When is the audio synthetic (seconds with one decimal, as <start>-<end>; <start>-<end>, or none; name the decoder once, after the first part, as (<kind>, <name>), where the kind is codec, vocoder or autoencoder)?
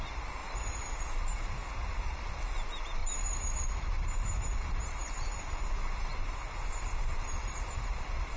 0.4-0.9 (vocoder, BigVGAN v2); 3.0-5.6; 6.1-7.1